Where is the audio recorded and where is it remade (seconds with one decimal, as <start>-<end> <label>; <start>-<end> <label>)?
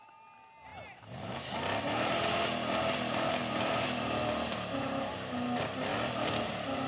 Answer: 0.0-6.9 recorded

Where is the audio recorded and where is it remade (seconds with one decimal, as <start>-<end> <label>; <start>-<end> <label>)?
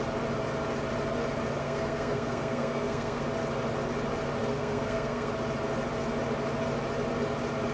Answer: 0.0-1.6 recorded; 1.6-3.2 remade; 3.2-4.5 recorded; 4.5-5.3 remade; 5.3-7.7 recorded